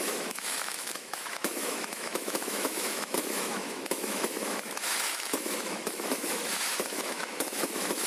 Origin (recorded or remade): remade